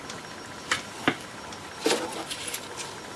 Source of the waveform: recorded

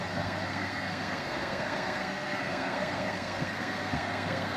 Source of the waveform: remade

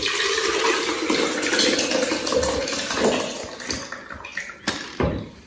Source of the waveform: recorded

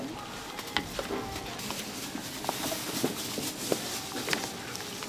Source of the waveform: recorded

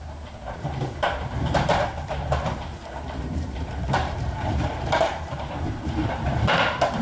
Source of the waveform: remade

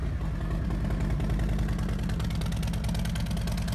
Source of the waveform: recorded